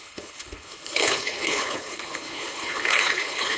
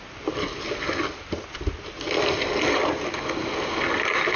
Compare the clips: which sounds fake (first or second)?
first